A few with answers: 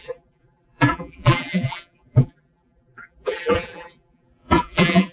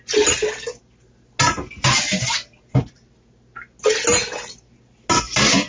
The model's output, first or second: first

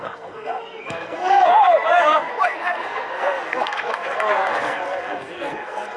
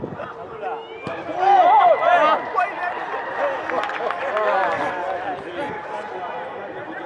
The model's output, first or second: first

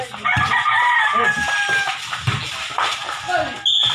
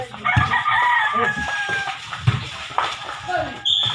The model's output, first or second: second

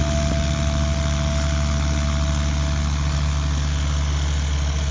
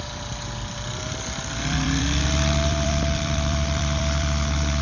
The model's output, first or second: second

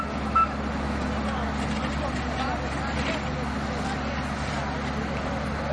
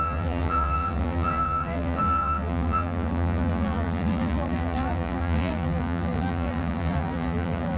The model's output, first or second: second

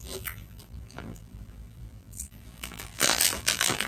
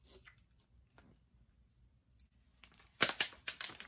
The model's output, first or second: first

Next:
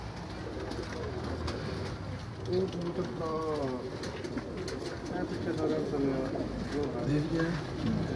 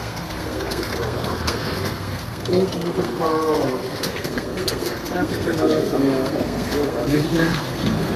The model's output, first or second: second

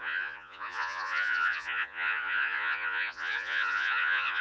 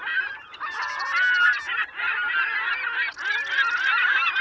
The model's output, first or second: first